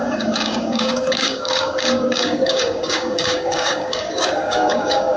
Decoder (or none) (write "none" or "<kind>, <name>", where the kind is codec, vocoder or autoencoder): codec, DAC